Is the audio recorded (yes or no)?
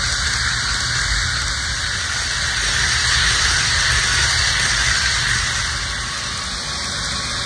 yes